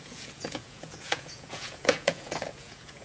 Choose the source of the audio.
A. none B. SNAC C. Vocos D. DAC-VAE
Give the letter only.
C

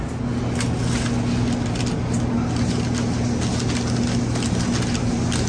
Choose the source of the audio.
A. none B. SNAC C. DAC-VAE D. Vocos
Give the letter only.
A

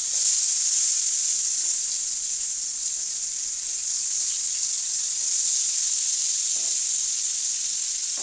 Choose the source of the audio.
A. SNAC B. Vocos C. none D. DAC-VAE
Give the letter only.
C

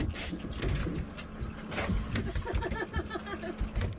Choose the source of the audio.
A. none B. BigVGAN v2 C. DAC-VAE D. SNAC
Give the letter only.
A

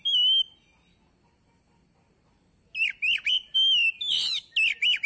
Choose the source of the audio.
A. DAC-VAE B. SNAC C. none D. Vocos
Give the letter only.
C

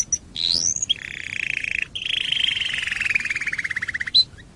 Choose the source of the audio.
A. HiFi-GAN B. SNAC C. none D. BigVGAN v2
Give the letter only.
C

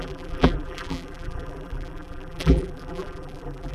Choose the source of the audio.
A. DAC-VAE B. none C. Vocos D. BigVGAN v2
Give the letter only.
D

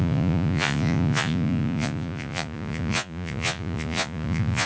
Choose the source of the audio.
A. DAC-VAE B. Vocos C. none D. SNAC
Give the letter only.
B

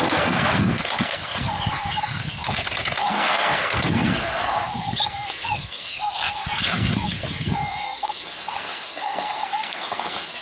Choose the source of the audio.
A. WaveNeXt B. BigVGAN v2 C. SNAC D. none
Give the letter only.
C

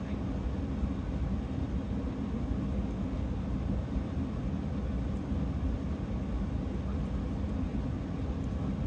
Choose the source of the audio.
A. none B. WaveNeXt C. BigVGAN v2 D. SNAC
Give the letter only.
A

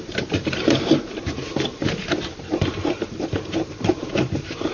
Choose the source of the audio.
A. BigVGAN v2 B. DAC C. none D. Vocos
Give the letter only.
A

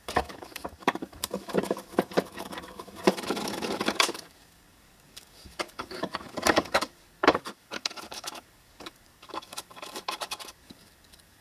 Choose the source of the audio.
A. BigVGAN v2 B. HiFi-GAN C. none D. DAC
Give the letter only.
D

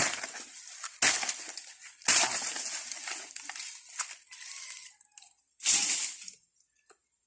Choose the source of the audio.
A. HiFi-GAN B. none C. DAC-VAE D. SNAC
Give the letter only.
B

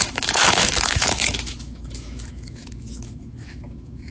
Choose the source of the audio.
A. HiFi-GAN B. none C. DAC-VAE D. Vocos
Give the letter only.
C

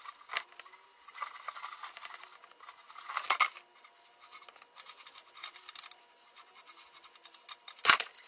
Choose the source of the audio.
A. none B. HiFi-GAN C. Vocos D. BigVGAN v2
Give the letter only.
A